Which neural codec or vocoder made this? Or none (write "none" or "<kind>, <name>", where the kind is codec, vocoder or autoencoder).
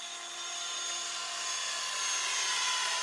none